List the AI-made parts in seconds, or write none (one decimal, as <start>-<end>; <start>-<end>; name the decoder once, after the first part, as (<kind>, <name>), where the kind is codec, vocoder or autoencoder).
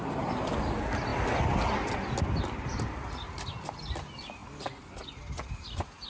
none